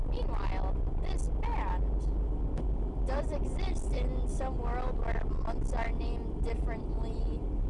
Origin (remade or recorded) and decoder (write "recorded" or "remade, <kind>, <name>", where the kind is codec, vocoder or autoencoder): recorded